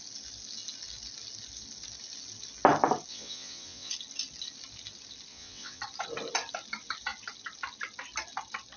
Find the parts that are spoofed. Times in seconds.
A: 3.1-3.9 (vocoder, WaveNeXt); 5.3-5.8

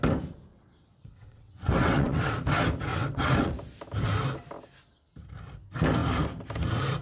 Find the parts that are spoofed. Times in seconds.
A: 0.5-2.3 (vocoder, WaveNeXt); 2.9-3.5

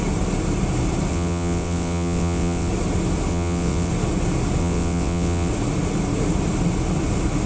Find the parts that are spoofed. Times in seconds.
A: 1.1-2.7 (vocoder, WaveNeXt); 3.3-3.9; 4.6-5.5

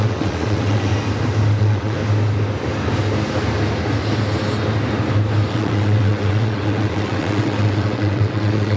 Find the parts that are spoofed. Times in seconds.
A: 0.0-0.9 (vocoder, WaveNeXt); 1.6-2.0; 5.5-8.8

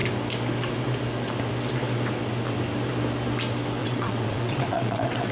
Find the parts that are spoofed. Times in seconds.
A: 3.8-5.3 (vocoder, WaveNeXt)